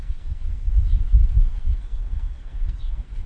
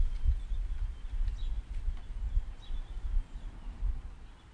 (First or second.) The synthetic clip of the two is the first